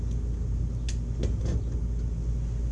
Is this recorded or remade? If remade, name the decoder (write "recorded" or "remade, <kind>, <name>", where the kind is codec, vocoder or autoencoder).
recorded